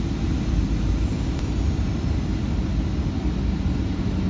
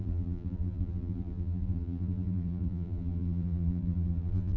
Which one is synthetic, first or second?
second